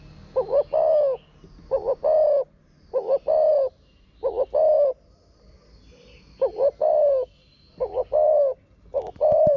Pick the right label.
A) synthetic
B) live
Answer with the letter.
B